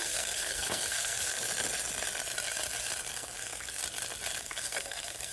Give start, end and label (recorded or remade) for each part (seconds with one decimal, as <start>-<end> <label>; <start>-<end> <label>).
0.0-1.4 remade; 1.4-3.1 recorded; 3.1-3.8 remade; 3.8-4.4 recorded; 4.4-5.3 remade